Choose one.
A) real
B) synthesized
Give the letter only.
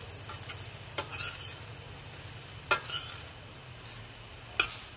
A